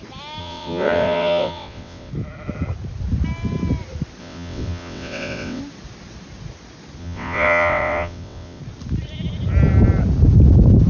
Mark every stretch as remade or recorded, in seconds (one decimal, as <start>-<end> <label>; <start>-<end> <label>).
0.0-0.4 recorded; 0.4-2.1 remade; 2.1-4.2 recorded; 4.2-5.6 remade; 5.6-7.0 recorded; 7.0-8.6 remade; 8.6-10.9 recorded